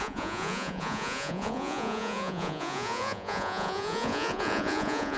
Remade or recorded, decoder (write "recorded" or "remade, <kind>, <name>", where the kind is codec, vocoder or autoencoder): remade, vocoder, Vocos